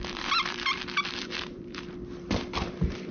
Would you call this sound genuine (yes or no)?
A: no